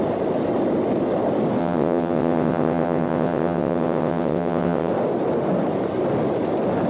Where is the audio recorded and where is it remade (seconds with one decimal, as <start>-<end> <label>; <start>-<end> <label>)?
0.0-1.6 recorded; 1.6-4.9 remade; 4.9-6.9 recorded

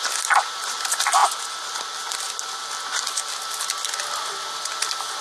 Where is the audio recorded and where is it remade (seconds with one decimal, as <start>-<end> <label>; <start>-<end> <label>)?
0.0-5.2 recorded

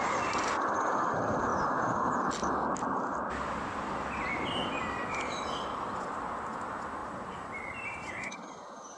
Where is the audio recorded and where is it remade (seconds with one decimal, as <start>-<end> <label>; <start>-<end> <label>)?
0.0-7.0 recorded; 7.0-8.6 remade; 8.6-9.0 recorded

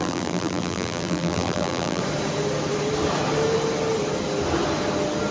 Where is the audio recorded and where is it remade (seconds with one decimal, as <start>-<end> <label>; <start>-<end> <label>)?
0.0-2.0 remade; 2.0-5.3 recorded

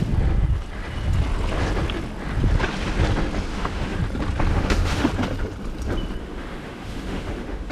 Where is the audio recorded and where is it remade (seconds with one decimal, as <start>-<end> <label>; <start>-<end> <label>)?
0.0-3.5 recorded; 3.5-4.0 remade; 4.0-4.5 recorded; 4.5-5.1 remade; 5.1-6.2 recorded; 6.2-7.7 remade

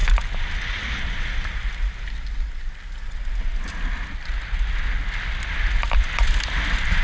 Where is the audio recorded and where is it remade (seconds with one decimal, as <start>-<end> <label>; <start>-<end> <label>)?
0.0-7.0 recorded

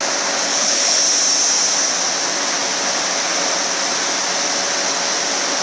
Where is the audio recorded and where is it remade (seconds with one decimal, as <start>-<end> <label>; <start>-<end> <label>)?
0.0-0.5 recorded; 0.5-1.0 remade; 1.0-5.6 recorded